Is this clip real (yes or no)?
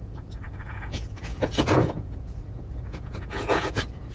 no